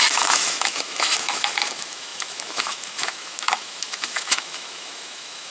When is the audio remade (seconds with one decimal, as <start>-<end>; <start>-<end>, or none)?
0.0-5.5